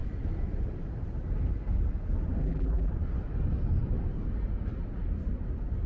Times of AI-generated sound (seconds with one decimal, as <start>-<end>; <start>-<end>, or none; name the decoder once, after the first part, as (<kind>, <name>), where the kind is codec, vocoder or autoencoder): 2.4-2.9 (vocoder, BigVGAN v2)